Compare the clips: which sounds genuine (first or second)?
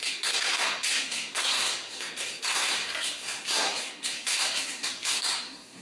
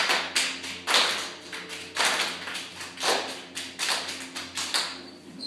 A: second